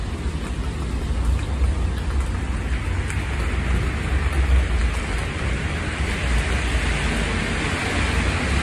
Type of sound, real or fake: real